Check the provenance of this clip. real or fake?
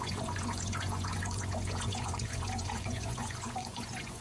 fake